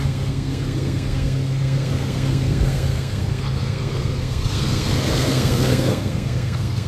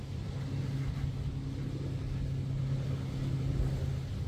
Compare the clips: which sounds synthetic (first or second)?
first